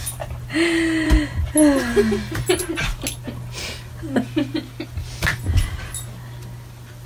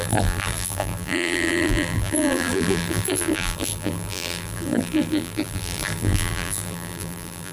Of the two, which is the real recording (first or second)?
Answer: first